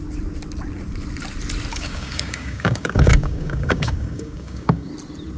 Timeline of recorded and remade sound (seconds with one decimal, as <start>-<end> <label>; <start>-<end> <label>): 0.0-1.7 recorded; 1.7-4.9 remade; 4.9-5.4 recorded